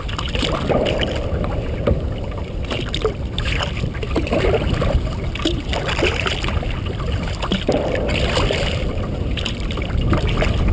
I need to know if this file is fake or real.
real